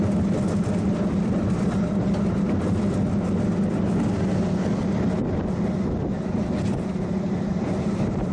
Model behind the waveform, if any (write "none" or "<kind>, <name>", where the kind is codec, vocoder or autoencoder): none